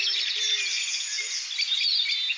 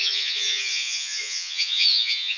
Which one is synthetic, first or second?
second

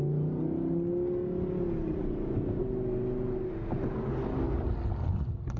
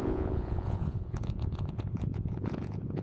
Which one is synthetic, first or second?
second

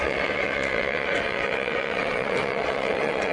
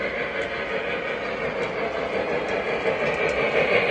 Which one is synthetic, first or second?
first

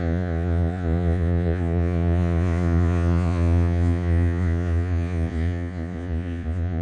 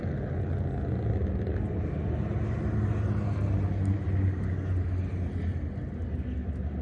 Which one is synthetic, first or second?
first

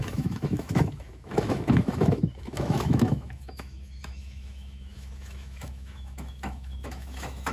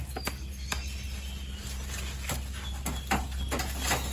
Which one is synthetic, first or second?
first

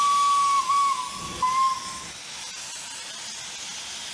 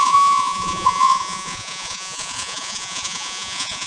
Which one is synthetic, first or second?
second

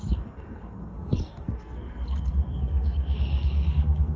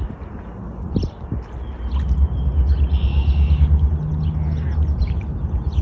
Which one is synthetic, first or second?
first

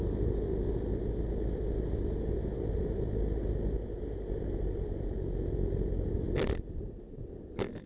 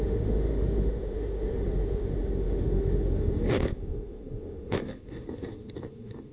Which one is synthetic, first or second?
second